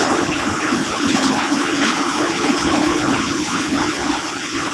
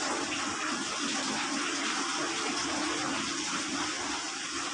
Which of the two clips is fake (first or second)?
first